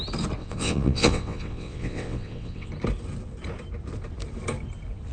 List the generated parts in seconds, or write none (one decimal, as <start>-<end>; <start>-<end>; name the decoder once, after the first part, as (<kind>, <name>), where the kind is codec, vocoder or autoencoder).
0.4-2.7 (vocoder, WaveNeXt)